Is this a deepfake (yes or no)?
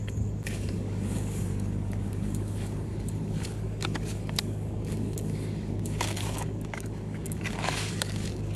yes